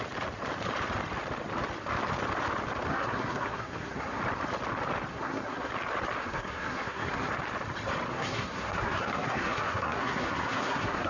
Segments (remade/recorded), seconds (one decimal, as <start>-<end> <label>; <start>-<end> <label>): 0.0-2.9 recorded; 2.9-4.2 remade; 4.2-5.1 recorded; 5.1-5.7 remade; 5.7-6.2 recorded; 6.2-7.3 remade; 7.3-8.1 recorded; 8.1-11.1 remade

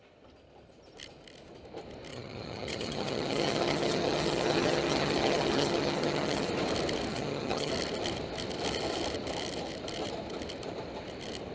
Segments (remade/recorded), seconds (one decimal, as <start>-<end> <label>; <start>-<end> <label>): 0.0-2.1 recorded; 2.1-6.5 remade; 6.5-7.1 recorded; 7.1-7.7 remade; 7.7-11.5 recorded

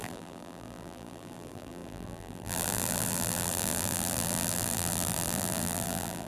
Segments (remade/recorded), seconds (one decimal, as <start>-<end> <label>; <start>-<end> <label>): 0.0-6.3 remade

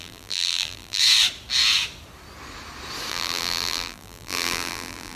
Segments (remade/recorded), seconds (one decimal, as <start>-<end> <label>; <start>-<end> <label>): 0.0-1.0 remade; 1.0-3.1 recorded; 3.1-5.2 remade